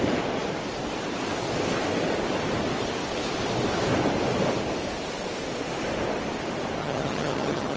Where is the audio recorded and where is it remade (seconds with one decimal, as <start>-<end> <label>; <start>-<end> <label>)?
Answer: 0.0-6.8 recorded; 6.8-7.8 remade